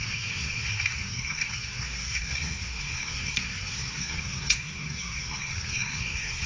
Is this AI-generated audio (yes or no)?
yes